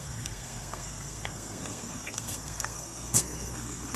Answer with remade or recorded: remade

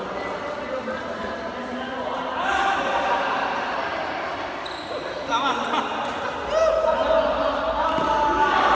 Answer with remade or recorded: recorded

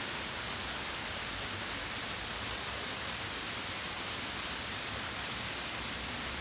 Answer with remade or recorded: recorded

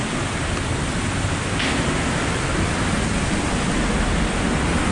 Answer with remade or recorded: recorded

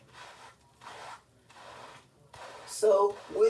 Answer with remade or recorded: recorded